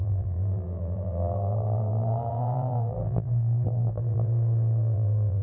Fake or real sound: fake